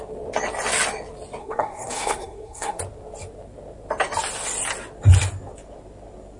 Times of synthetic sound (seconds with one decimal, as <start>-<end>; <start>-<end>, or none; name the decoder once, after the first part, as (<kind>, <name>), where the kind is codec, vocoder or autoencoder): 1.4-2.8 (codec, SNAC)